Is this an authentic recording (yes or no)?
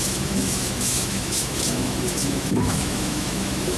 no